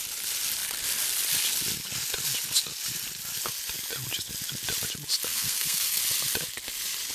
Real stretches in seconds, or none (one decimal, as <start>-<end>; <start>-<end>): 0.0-5.3; 6.0-7.1